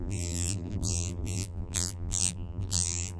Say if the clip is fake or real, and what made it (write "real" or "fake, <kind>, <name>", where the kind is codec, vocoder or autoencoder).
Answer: fake, vocoder, BigVGAN v2